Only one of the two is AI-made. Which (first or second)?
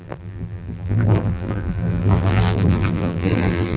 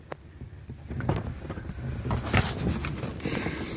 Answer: first